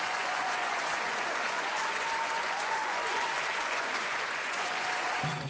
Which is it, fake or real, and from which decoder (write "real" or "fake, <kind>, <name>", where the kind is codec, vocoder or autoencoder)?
fake, vocoder, Vocos